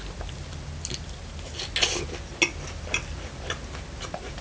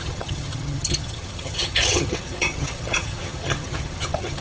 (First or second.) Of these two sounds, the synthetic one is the second